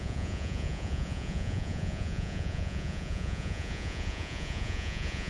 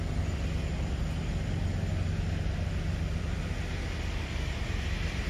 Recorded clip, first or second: second